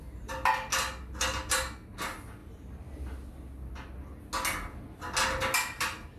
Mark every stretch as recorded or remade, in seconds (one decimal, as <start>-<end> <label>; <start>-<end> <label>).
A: 0.0-6.2 recorded